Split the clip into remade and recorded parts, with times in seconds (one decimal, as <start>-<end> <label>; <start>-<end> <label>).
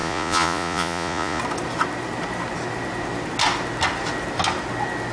0.0-1.4 remade; 1.4-5.1 recorded